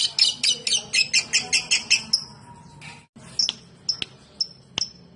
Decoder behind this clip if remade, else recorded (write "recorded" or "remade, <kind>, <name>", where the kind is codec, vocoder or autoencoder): recorded